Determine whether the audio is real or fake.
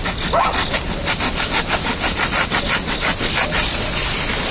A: real